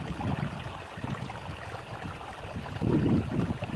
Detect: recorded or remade recorded